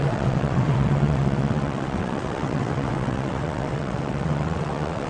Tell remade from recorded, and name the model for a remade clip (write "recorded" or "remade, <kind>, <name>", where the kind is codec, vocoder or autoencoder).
remade, vocoder, WaveNeXt